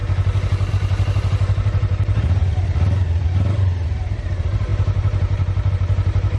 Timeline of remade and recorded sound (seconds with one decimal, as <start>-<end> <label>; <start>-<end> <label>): 0.0-0.7 recorded; 0.7-2.4 remade; 2.4-4.0 recorded; 4.0-6.4 remade